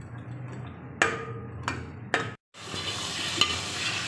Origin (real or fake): real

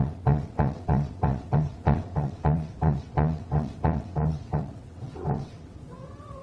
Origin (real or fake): fake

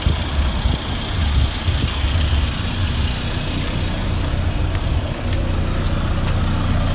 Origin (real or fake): real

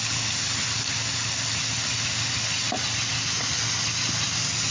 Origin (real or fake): real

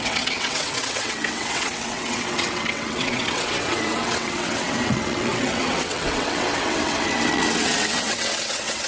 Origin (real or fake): fake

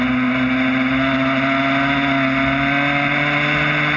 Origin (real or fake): real